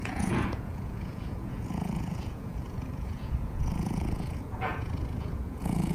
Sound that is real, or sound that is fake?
fake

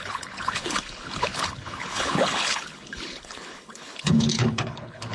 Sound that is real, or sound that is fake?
fake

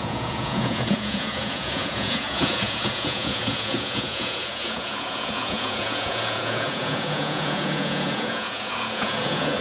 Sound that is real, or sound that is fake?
fake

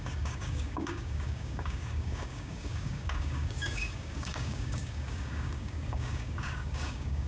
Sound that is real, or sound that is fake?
fake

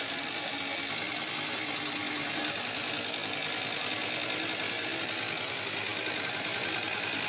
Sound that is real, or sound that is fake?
real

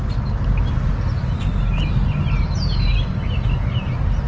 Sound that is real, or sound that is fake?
real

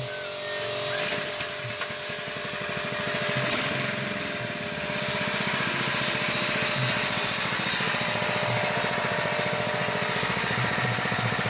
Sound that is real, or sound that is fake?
real